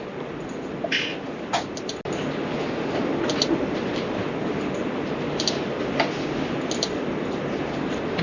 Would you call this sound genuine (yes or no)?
yes